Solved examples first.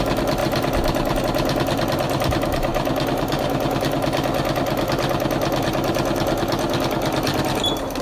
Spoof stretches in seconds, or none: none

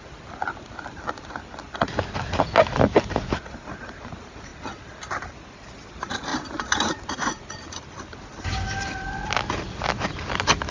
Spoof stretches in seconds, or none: 6.3-8.1 (vocoder, BigVGAN v2)

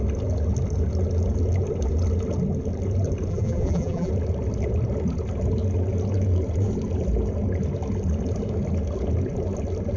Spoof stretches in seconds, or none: 3.3-4.1 (vocoder, BigVGAN v2)

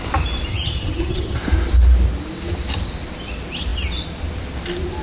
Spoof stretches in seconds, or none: 0.5-1.4 (vocoder, HiFi-GAN)

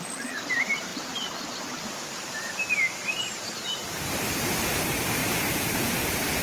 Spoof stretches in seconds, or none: 0.0-6.4 (vocoder, BigVGAN v2)